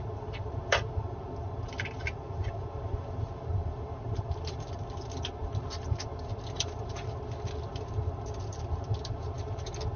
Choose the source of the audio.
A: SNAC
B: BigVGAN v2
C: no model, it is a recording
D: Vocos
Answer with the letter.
B